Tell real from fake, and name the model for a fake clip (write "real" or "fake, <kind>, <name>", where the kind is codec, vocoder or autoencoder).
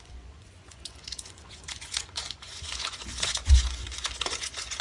fake, vocoder, Vocos